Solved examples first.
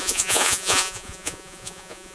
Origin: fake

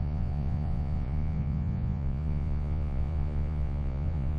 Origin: fake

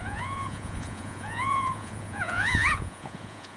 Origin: fake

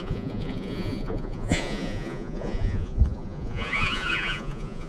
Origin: fake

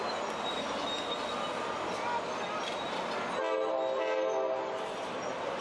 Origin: real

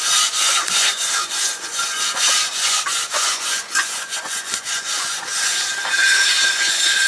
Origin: fake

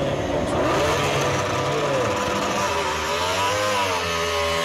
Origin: real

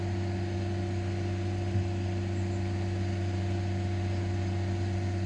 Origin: real